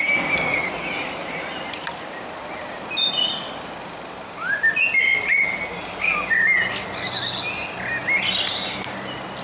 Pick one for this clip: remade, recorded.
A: recorded